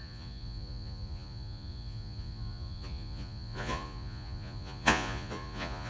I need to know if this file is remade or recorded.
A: remade